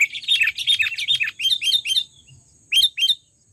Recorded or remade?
recorded